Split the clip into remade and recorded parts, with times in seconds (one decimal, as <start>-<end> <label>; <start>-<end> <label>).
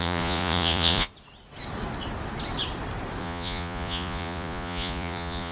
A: 0.0-1.1 remade; 1.1-3.2 recorded; 3.2-5.5 remade